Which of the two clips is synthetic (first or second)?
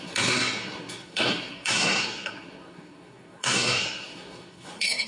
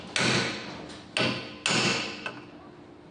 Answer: first